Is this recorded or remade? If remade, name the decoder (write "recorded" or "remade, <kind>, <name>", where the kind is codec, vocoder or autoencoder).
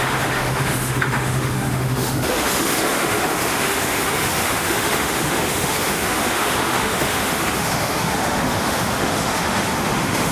remade, autoencoder, DAC-VAE